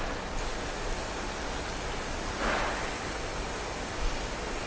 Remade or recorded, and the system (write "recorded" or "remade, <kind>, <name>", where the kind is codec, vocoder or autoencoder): recorded